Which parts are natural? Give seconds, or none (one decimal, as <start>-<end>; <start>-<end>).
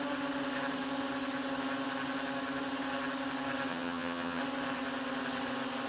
0.0-3.7; 4.4-5.9